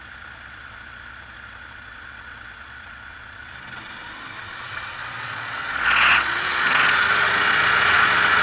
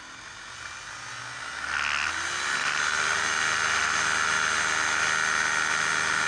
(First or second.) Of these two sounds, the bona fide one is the second